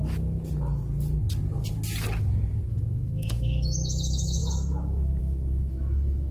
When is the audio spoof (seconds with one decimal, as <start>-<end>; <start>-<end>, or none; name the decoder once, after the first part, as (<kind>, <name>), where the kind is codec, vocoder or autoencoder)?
2.7-6.3 (autoencoder, DAC-VAE)